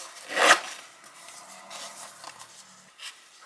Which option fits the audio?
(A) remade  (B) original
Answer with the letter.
B